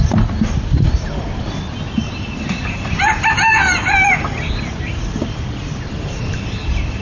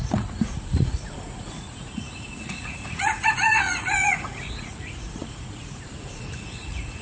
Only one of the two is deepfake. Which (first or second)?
second